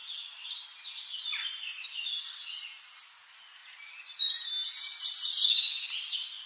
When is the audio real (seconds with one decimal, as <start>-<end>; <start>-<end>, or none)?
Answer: 1.2-6.5

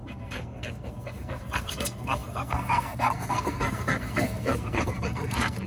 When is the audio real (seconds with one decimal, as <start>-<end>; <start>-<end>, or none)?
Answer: none

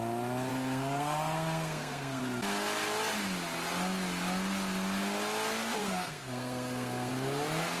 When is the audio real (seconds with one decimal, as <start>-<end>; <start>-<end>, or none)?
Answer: 0.0-0.5; 2.2-5.8; 7.1-7.8

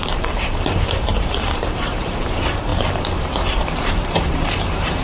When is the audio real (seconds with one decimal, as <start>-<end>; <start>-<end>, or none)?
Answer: none

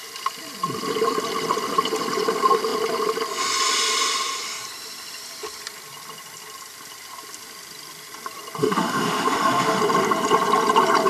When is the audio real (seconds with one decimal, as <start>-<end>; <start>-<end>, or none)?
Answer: 0.0-8.6; 9.8-11.1

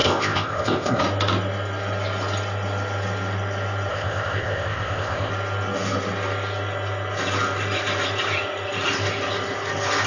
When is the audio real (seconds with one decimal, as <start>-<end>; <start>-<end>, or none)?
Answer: 1.0-3.9; 5.3-10.1